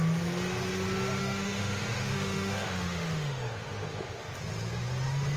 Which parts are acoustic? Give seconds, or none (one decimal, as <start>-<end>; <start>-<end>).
0.0-1.2; 4.4-5.4